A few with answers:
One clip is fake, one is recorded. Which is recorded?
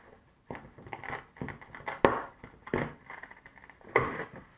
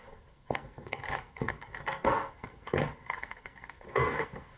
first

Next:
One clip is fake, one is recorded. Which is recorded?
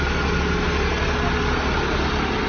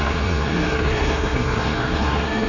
first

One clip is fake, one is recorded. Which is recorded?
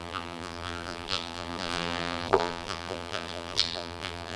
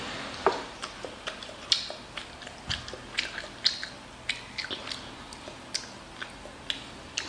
second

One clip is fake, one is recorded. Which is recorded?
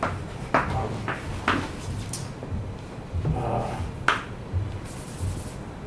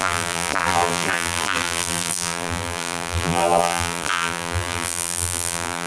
first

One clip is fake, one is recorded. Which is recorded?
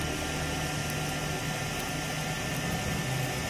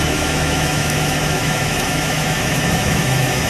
first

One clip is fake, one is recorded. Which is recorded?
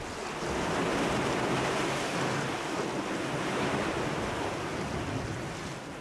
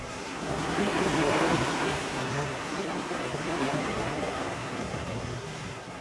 first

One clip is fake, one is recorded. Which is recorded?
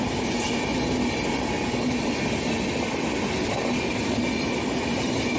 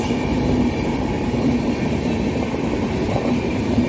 first